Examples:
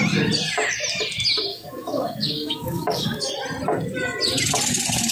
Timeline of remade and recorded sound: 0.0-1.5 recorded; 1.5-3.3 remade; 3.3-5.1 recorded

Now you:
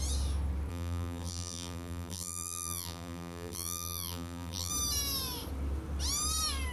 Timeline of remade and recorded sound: 0.0-0.7 recorded; 0.7-4.7 remade; 4.7-6.7 recorded

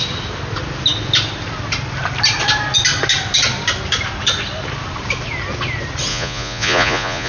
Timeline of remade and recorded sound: 0.0-6.1 recorded; 6.1-7.3 remade

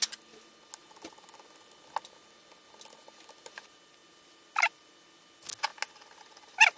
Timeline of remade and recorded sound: 0.0-6.8 recorded

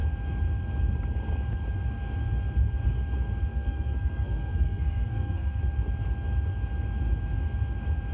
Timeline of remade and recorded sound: 0.0-3.5 recorded; 3.5-5.6 remade; 5.6-8.1 recorded

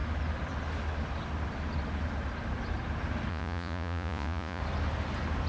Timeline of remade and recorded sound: 0.0-3.3 recorded; 3.3-4.6 remade; 4.6-5.5 recorded

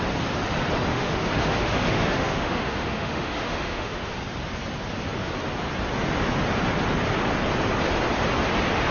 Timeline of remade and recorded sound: 0.0-0.9 recorded; 0.9-4.2 remade; 4.2-8.9 recorded